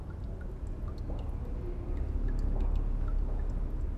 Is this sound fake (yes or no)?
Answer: no